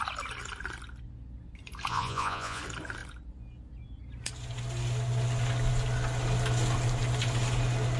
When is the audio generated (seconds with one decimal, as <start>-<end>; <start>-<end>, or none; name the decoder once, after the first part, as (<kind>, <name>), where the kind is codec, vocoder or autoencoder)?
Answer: 1.9-2.6 (vocoder, Vocos)